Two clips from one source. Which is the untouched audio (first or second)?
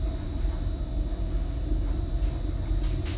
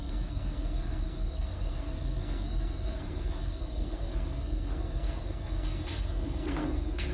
first